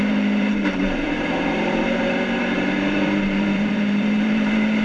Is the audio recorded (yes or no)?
no